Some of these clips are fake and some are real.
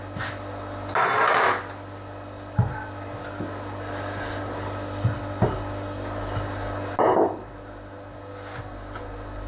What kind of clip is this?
real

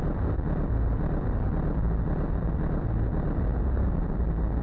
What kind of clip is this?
real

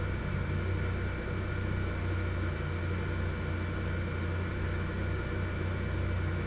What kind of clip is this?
real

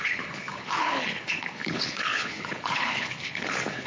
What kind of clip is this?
fake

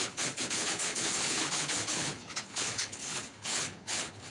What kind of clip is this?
fake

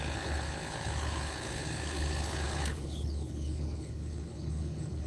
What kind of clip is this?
fake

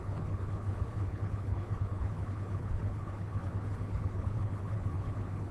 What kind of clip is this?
fake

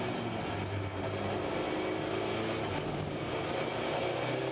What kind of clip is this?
real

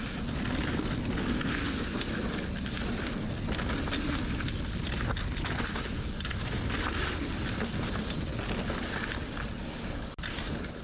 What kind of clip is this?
real